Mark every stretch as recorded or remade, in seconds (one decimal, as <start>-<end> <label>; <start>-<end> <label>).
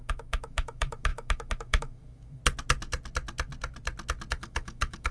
0.0-2.4 remade; 2.4-4.3 recorded; 4.3-5.1 remade